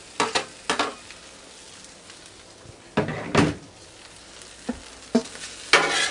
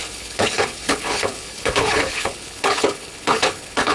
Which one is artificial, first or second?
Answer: second